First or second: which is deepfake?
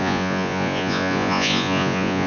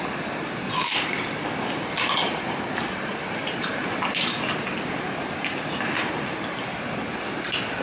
first